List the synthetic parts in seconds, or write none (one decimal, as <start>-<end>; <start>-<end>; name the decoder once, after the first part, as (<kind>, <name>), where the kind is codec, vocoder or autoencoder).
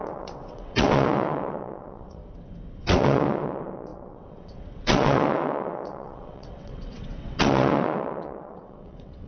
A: 0.0-2.2 (vocoder, WaveNeXt); 2.8-9.3